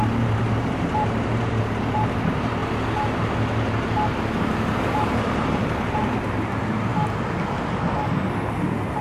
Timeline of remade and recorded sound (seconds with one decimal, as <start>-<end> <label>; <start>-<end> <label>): 0.0-2.6 remade; 2.6-4.8 recorded; 4.8-6.9 remade; 6.9-9.0 recorded